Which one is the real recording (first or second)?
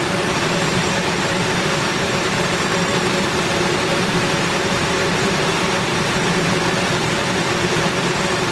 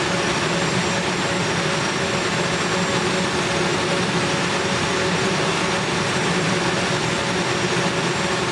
second